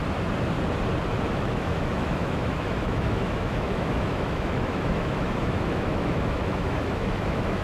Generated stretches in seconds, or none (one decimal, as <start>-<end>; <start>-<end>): 1.2-7.6